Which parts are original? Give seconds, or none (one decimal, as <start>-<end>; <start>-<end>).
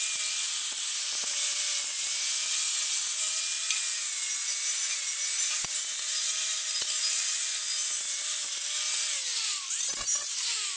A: 0.0-9.3; 10.3-10.8